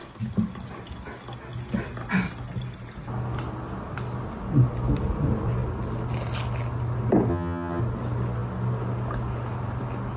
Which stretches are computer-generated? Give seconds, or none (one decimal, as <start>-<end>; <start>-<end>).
7.3-7.8